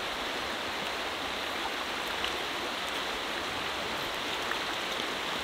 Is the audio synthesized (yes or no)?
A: no